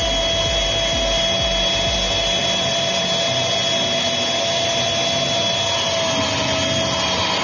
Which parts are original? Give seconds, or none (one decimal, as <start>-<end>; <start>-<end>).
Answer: 0.0-2.4; 3.1-7.4